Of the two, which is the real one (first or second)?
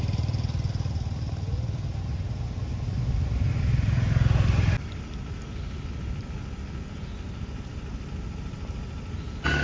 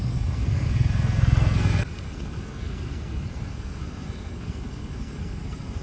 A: first